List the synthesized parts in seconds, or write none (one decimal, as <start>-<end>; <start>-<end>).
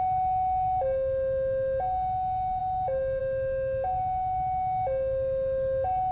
none